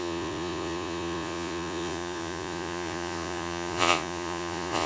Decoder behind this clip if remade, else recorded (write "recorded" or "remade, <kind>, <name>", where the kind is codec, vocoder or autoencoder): remade, vocoder, Vocos